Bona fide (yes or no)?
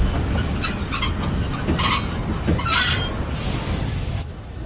yes